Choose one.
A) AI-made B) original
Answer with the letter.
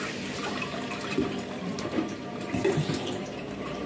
A